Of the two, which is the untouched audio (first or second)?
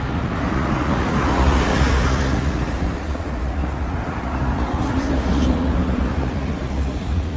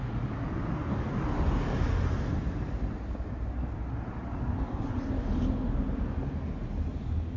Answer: second